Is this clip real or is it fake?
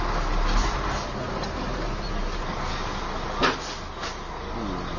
real